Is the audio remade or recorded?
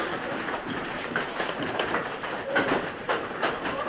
remade